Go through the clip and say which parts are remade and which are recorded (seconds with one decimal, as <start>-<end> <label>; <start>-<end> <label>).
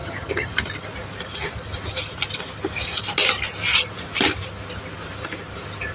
0.0-0.5 remade; 0.5-5.9 recorded